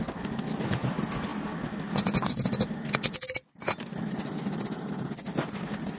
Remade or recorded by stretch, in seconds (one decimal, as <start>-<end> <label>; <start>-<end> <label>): 0.0-6.0 recorded